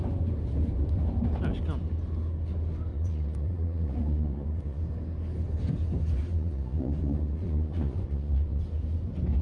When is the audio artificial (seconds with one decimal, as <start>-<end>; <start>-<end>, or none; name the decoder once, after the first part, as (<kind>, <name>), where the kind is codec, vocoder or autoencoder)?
2.9-4.8 (vocoder, Vocos); 6.3-8.6

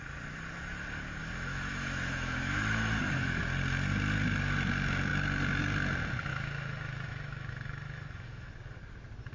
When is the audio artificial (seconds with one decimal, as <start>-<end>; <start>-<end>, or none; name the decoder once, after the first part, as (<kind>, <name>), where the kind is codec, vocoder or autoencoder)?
1.2-3.4 (autoencoder, DAC-VAE); 6.3-8.5

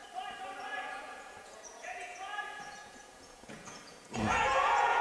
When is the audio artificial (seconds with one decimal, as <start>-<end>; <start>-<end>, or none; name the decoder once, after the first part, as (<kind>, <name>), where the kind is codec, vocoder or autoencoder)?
0.7-5.0 (vocoder, Vocos)

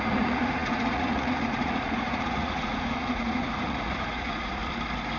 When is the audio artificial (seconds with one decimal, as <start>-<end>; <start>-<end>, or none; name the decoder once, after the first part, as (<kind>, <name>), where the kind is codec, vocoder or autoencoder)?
0.0-4.6 (vocoder, Vocos)

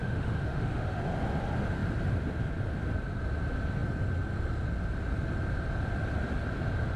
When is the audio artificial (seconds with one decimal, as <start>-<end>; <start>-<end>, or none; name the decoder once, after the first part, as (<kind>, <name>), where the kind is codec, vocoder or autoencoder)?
0.0-1.0 (autoencoder, DAC-VAE)

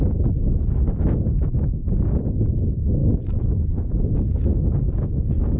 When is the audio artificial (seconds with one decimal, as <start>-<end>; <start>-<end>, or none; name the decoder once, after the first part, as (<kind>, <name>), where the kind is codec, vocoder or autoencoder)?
none

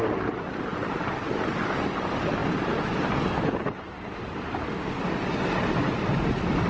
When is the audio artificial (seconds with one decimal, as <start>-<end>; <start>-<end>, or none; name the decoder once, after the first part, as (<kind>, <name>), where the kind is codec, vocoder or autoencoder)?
none

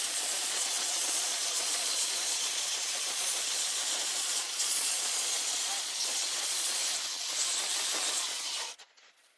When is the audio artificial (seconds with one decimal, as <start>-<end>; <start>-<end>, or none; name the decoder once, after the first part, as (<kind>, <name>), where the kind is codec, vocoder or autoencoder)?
0.0-6.8 (vocoder, Vocos); 8.1-9.4